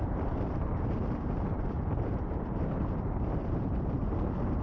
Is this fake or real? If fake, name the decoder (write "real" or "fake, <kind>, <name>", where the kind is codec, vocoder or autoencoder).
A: fake, vocoder, BigVGAN v2